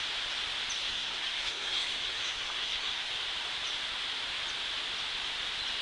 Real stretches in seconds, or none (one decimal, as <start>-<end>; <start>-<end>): 0.0-0.8; 3.1-5.8